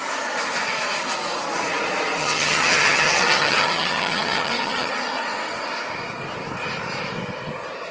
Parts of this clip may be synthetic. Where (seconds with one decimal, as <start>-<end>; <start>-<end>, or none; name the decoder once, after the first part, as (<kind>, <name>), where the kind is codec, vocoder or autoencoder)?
2.2-4.9 (vocoder, HiFi-GAN)